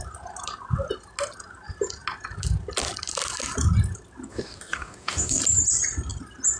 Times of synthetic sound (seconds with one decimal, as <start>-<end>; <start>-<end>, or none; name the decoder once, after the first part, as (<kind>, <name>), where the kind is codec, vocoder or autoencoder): 4.3-5.4 (codec, DAC)